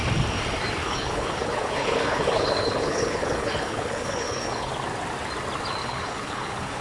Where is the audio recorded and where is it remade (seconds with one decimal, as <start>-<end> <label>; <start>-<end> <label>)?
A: 0.0-0.8 recorded; 0.8-4.7 remade; 4.7-5.8 recorded; 5.8-6.8 remade

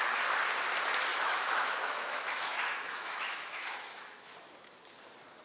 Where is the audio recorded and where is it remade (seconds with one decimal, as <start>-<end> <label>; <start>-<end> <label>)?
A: 0.0-1.1 recorded; 1.1-4.3 remade; 4.3-5.4 recorded

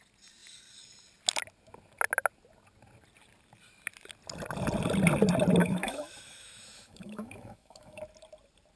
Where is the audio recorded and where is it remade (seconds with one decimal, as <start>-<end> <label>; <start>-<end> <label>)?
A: 0.0-5.6 recorded; 5.6-8.0 remade; 8.0-8.8 recorded

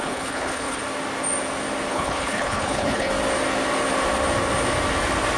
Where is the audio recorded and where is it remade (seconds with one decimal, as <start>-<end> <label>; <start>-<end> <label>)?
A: 0.0-0.8 remade; 0.8-1.9 recorded; 1.9-3.1 remade; 3.1-5.4 recorded

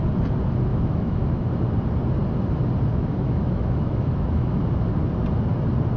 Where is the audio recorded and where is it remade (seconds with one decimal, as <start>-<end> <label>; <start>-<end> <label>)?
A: 0.0-0.7 recorded; 0.7-1.5 remade; 1.5-2.9 recorded; 2.9-4.6 remade; 4.6-6.0 recorded

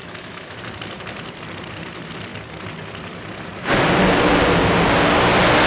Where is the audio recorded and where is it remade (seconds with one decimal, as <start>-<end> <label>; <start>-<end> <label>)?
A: 0.0-0.6 remade; 0.6-5.7 recorded